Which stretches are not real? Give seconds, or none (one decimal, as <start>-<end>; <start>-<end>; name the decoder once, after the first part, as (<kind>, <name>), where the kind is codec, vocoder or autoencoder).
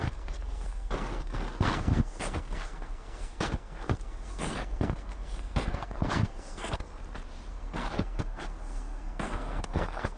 0.0-7.0 (codec, SNAC); 7.5-10.2